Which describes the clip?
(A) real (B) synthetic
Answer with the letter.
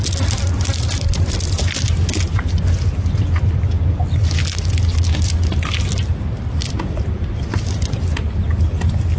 A